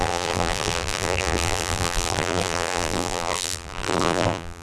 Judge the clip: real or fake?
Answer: fake